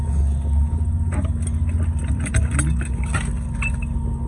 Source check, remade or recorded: recorded